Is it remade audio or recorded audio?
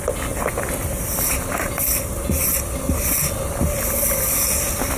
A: recorded